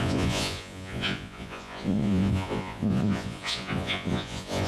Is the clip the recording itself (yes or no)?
no